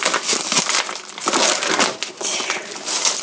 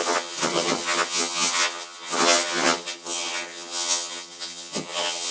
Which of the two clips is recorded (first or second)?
first